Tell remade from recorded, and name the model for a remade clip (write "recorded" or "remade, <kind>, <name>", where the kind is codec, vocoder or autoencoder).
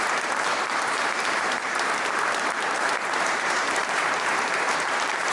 remade, vocoder, BigVGAN v2